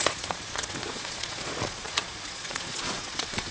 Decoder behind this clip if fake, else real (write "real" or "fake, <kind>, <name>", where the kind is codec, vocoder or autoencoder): fake, vocoder, Vocos